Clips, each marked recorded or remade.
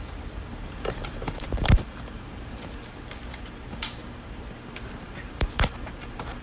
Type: remade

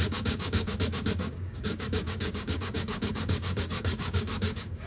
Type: remade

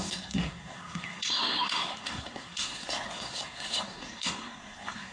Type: remade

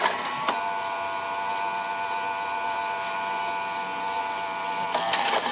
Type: recorded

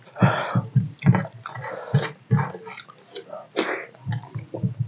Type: recorded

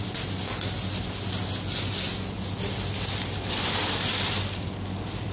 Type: recorded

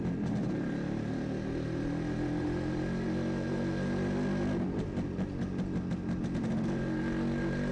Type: recorded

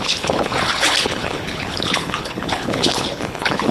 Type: remade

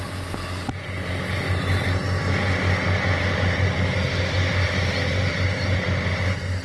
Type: recorded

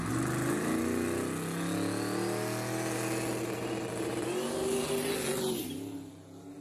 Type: recorded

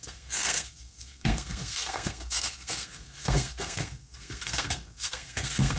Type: remade